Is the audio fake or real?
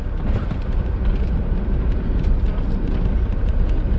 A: real